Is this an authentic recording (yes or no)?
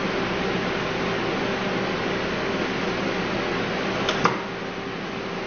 yes